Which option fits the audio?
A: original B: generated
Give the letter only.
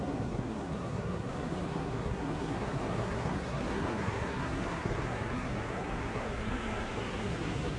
B